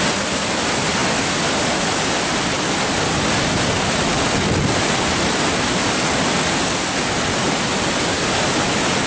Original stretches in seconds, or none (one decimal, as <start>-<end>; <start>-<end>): 0.0-9.1